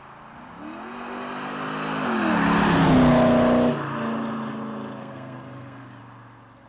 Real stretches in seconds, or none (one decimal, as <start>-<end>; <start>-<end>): 0.0-5.0; 6.0-6.7

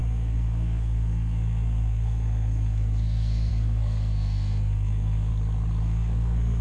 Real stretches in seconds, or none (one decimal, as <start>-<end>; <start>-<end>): 5.3-5.8

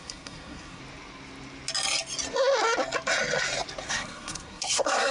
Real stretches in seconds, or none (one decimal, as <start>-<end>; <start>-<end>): 0.8-3.9

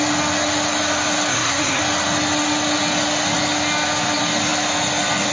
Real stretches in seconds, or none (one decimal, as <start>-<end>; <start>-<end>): 0.0-1.3; 1.8-5.3

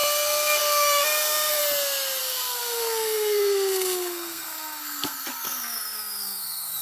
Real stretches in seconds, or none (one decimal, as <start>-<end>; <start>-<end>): 1.6-2.2

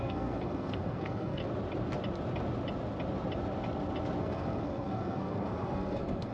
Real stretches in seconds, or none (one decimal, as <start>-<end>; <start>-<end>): 1.4-4.2

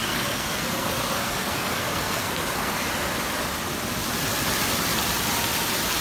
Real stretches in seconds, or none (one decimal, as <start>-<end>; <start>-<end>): 2.8-6.0